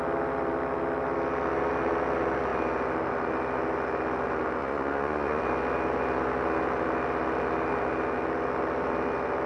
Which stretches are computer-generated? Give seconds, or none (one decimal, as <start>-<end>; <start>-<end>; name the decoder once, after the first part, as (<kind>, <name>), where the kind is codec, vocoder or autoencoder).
4.6-5.4 (vocoder, Vocos)